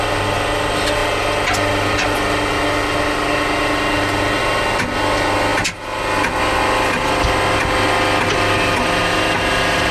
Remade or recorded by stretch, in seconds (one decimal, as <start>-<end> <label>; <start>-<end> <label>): 0.0-9.9 recorded